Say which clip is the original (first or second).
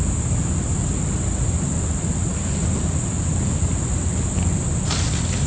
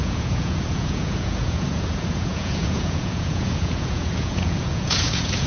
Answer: first